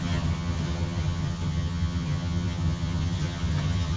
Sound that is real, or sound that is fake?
fake